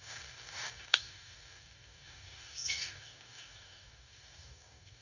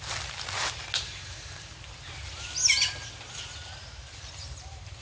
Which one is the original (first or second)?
second